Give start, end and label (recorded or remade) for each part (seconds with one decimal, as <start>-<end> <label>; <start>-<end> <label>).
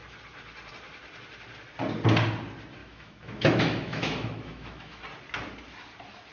0.0-2.8 recorded; 2.8-5.0 remade; 5.0-6.3 recorded